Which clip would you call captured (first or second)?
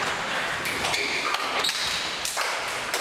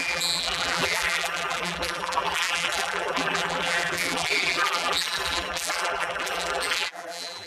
first